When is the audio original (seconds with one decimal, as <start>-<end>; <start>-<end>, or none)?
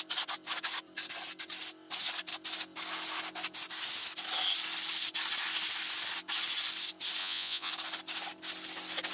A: 0.0-7.2; 7.7-9.1